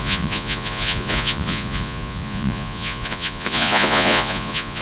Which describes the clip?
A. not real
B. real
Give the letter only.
A